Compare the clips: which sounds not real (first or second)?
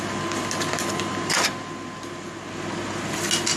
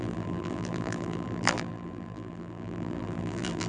second